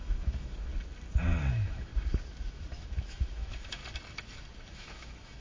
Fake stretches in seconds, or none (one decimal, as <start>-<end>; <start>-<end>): 0.0-0.7; 1.5-1.9; 2.5-3.8; 4.7-5.4